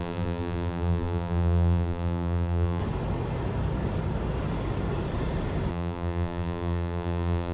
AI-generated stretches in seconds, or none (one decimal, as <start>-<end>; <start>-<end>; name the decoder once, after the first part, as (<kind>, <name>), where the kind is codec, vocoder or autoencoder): 0.0-2.8 (vocoder, BigVGAN v2); 5.7-7.5